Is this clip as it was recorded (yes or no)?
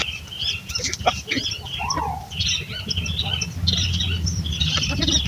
yes